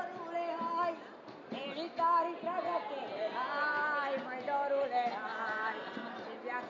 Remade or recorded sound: recorded